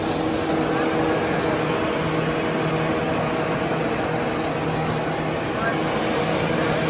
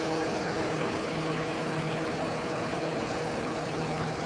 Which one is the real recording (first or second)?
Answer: first